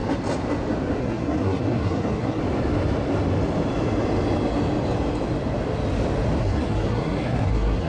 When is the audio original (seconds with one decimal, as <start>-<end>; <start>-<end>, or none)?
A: 0.0-1.0; 2.4-6.4

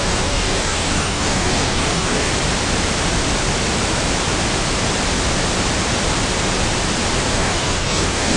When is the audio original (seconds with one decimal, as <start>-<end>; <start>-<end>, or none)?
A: 2.3-7.3

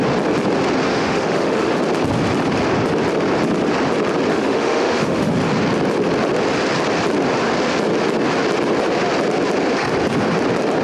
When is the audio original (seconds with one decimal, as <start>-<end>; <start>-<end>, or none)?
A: 0.0-0.9; 1.8-4.3; 5.3-10.8